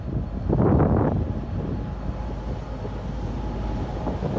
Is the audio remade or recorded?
recorded